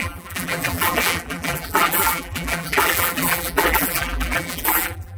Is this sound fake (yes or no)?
yes